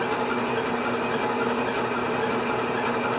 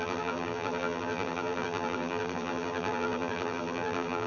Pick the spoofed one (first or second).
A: second